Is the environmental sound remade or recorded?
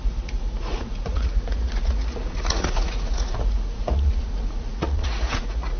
remade